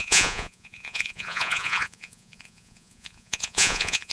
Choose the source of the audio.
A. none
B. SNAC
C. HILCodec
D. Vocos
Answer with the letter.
D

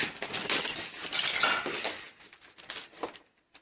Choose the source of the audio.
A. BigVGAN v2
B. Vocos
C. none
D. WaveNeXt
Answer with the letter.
C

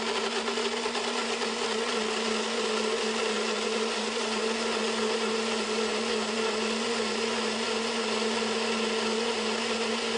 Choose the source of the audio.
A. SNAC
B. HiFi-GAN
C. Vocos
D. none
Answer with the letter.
D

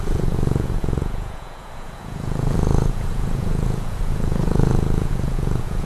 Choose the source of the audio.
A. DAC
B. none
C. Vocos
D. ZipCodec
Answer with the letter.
C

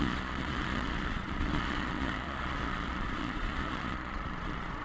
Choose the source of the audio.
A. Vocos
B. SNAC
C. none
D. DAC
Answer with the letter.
A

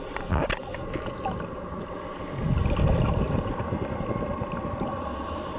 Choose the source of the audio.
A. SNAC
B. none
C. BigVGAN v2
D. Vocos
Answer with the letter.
B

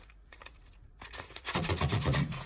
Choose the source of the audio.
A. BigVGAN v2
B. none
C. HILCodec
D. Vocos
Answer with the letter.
D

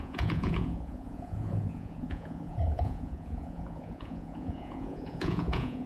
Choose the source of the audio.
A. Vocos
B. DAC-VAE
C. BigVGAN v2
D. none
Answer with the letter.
A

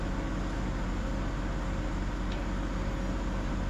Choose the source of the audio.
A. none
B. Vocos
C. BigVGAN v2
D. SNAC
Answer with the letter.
A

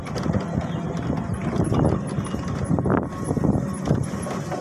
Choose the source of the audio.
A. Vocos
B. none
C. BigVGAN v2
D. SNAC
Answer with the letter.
B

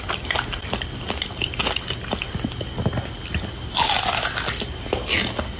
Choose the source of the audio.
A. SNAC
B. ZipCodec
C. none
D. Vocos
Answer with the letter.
C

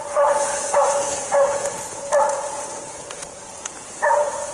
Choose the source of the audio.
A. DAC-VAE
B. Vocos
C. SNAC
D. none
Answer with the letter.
B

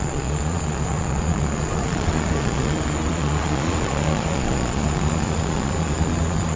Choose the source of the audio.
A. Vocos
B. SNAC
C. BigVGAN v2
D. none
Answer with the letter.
A